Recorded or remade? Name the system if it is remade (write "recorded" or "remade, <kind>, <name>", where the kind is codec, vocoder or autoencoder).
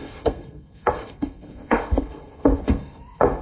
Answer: remade, codec, SNAC